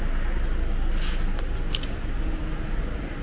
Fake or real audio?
real